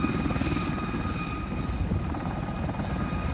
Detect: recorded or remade recorded